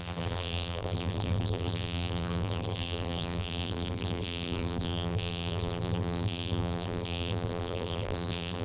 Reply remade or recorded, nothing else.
remade